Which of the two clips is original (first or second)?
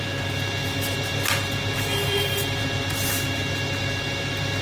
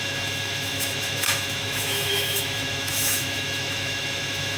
first